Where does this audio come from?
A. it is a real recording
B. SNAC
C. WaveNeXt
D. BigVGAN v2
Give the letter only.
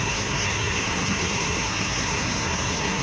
B